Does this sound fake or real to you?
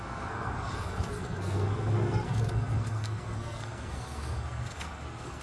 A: fake